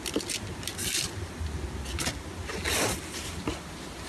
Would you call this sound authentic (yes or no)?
yes